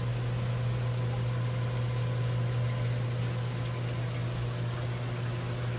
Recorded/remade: recorded